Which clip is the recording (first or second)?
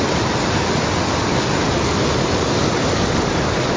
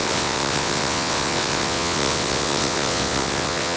first